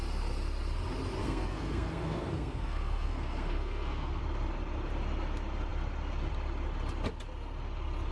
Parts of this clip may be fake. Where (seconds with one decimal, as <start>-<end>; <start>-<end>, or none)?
1.2-4.2